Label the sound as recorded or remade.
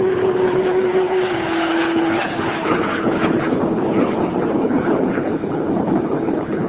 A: remade